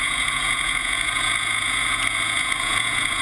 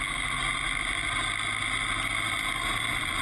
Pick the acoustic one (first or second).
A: second